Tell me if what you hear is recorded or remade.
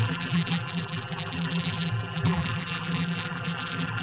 remade